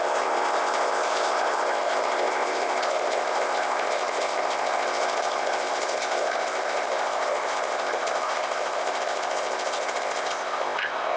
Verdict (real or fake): fake